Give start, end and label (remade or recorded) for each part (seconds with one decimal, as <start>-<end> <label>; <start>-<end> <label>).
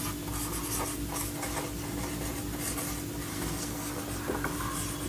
0.0-3.3 recorded; 3.3-4.0 remade; 4.0-5.1 recorded